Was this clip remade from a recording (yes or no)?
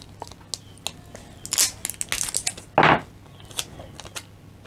no